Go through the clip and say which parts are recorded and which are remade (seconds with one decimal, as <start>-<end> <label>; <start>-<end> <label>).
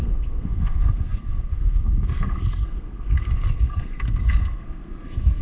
0.0-5.4 remade